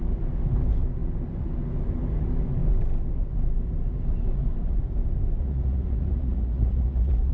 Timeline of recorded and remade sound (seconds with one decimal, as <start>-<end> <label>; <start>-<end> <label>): 0.0-5.4 recorded; 5.4-7.3 remade